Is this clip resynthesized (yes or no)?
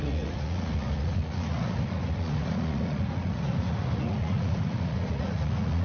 yes